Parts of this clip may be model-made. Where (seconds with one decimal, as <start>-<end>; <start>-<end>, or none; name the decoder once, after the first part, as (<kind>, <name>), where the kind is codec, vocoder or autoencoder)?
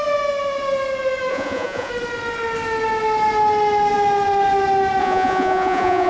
1.3-1.9 (vocoder, Vocos); 5.0-6.1